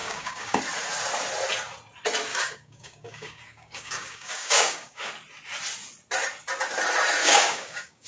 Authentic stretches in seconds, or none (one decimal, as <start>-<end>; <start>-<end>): 0.6-2.3; 5.1-7.2